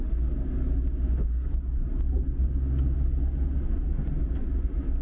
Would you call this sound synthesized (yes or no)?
no